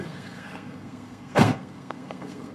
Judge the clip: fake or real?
fake